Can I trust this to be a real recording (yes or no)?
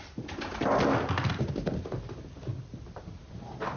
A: yes